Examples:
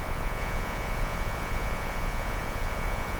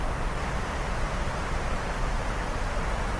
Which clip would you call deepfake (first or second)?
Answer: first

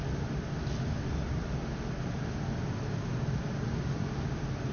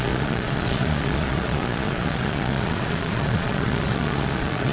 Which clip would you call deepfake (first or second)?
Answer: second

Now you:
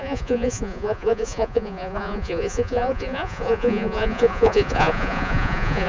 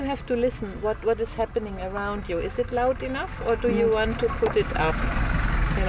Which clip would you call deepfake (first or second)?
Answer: first